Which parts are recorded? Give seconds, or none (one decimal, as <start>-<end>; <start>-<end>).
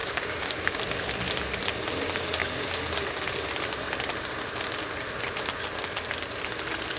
0.8-7.0